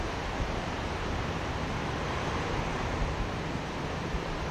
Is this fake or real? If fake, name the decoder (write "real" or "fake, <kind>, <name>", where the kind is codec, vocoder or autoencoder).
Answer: fake, vocoder, BigVGAN v2